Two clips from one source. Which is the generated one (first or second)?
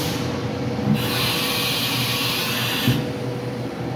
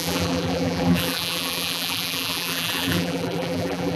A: second